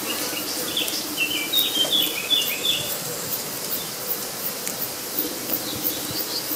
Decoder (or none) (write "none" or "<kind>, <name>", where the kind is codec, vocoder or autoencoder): none